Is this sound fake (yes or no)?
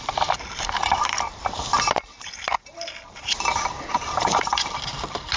yes